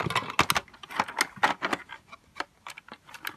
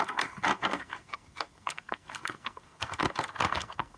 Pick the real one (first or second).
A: first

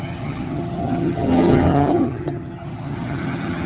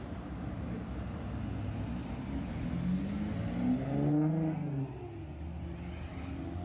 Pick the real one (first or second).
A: second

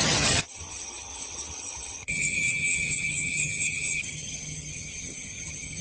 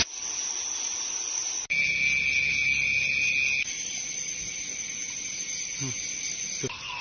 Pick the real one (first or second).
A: second